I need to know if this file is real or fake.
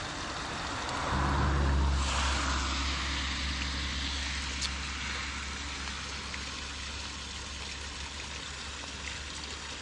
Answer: real